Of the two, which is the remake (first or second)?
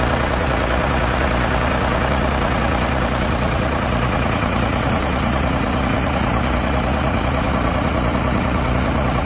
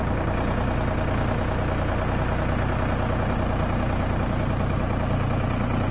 first